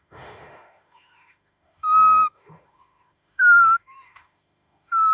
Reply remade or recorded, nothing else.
remade